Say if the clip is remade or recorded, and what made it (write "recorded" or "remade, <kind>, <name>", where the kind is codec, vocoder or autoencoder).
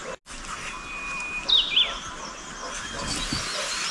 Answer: recorded